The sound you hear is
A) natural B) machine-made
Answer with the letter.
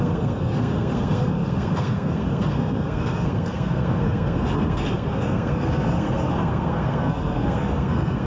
B